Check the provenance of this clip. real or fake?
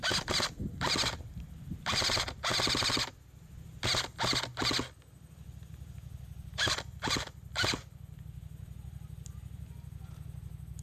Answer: real